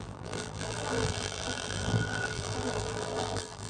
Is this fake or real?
fake